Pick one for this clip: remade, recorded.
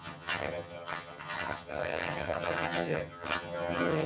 remade